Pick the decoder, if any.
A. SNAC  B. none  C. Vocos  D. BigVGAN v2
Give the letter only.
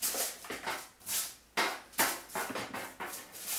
B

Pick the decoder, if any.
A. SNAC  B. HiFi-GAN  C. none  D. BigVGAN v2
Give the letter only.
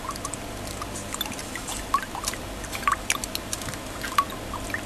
C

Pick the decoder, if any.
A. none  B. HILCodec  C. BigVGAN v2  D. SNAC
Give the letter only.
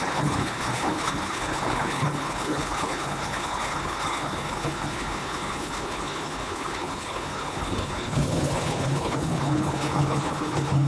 B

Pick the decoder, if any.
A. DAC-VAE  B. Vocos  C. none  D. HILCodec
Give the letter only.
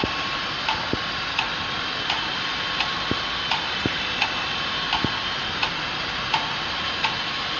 C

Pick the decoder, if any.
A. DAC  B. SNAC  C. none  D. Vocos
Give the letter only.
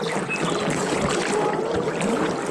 C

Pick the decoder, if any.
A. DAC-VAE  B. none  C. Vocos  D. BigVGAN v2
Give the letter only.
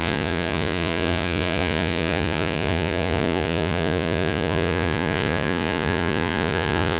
C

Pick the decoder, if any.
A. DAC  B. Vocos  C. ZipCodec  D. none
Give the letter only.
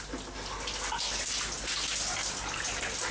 D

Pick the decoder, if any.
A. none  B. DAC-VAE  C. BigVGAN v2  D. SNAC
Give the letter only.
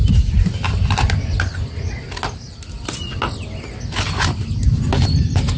A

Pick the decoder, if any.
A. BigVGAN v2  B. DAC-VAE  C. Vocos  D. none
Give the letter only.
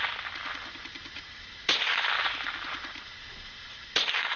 D